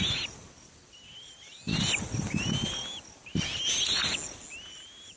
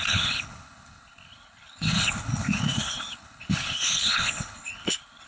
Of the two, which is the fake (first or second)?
second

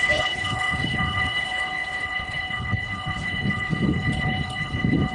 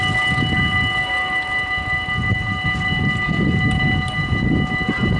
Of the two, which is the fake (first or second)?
first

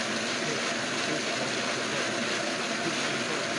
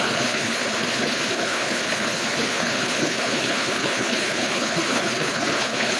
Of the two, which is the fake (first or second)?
second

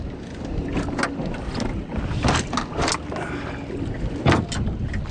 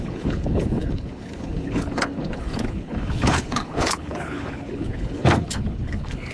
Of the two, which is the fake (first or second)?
second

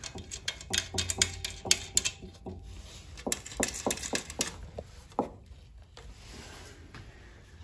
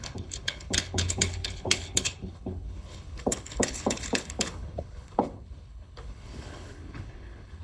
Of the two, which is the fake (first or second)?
second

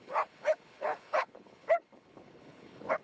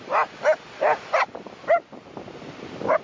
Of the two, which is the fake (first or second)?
first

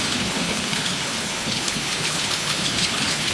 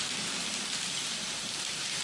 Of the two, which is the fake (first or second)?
first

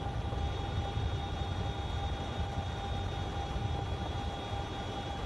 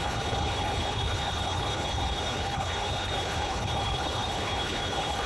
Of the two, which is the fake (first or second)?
second